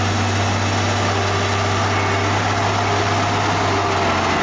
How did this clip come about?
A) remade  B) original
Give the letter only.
B